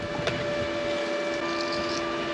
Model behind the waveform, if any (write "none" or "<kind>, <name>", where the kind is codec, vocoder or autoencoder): none